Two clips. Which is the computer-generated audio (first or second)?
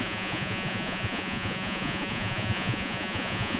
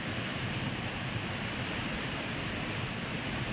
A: first